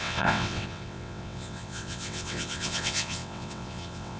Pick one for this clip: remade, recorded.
remade